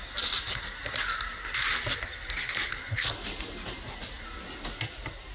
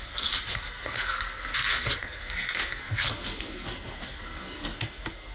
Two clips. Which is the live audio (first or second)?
first